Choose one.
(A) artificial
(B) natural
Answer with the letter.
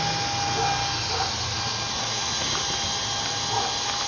B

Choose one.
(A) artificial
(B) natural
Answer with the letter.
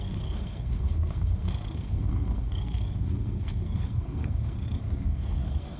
A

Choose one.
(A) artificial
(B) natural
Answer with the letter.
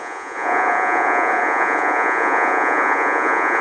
A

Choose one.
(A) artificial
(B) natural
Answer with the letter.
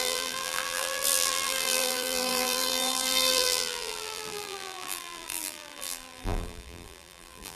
A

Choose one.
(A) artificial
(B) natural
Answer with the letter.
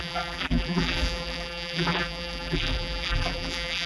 A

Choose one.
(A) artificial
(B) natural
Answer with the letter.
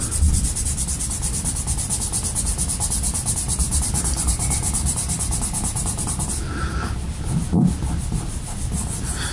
A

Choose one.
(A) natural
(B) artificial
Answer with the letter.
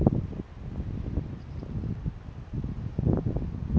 A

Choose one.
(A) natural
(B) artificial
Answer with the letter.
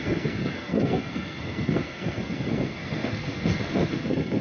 B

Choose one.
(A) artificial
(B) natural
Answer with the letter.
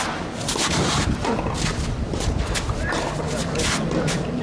B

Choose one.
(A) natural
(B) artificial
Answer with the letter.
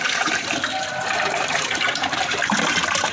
B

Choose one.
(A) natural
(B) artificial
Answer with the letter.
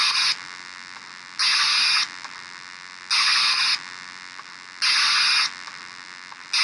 A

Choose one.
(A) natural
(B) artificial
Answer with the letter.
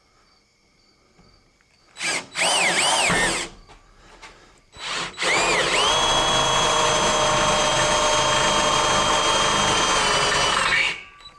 A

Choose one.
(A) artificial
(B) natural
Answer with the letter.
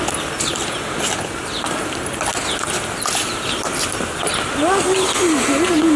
B